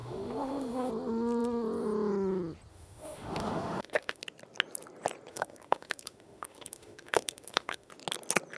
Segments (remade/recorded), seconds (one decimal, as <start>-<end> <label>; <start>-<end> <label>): 0.0-0.9 remade; 0.9-2.7 recorded; 2.7-4.2 remade; 4.2-5.3 recorded; 5.3-7.9 remade; 7.9-8.6 recorded